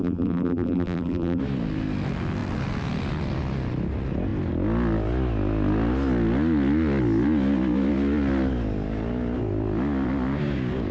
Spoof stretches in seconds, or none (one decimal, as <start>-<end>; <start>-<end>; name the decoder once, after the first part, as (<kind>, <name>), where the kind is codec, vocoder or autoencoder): 0.0-1.4 (vocoder, BigVGAN v2)